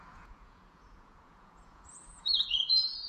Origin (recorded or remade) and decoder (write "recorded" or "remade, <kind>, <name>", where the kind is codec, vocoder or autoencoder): remade, vocoder, Vocos